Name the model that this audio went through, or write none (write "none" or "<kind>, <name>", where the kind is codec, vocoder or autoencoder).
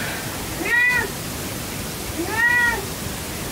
none